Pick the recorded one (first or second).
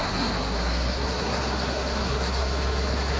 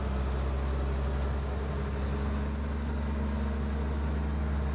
second